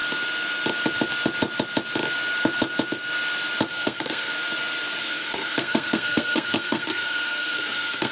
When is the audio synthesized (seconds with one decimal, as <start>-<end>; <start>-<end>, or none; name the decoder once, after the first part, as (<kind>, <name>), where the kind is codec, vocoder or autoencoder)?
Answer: 3.7-4.3 (codec, SNAC); 5.0-8.1